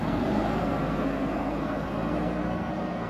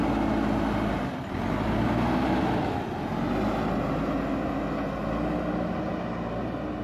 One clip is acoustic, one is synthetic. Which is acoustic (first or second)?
second